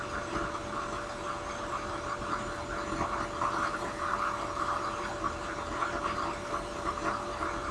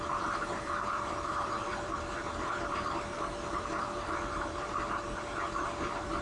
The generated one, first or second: second